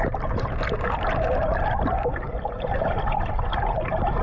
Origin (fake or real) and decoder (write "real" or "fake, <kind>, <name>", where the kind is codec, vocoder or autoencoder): fake, vocoder, BigVGAN v2